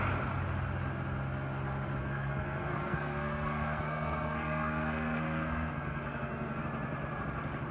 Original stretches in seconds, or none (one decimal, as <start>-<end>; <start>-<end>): 0.0-2.0; 6.6-7.7